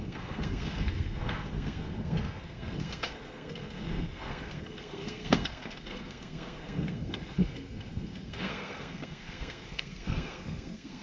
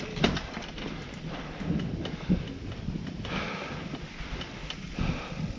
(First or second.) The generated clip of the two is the first